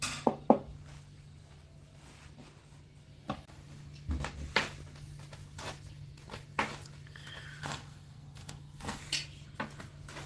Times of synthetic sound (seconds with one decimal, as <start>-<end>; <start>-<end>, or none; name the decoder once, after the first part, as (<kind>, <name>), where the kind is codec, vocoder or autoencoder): 7.6-9.0 (codec, SNAC)